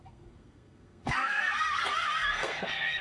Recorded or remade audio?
remade